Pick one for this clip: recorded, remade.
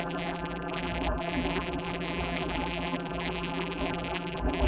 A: remade